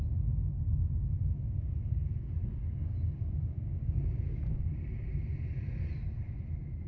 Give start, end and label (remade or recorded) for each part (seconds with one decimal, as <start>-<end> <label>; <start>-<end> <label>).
0.0-2.4 recorded; 2.4-4.5 remade; 4.5-6.9 recorded